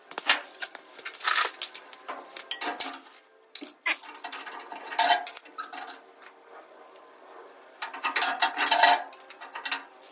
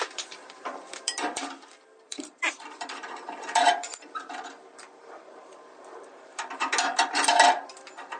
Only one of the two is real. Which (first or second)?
first